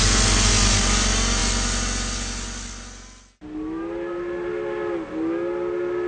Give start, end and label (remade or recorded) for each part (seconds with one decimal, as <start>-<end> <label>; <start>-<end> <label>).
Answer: 0.0-6.1 recorded